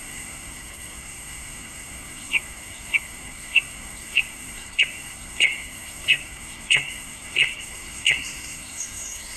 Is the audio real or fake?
fake